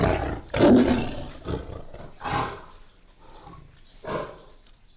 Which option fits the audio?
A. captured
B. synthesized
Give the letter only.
A